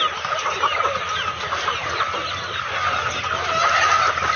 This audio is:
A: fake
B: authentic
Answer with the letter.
B